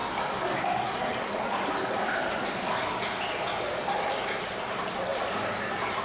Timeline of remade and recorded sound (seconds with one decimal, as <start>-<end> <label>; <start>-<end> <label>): 0.0-5.1 recorded; 5.1-6.0 remade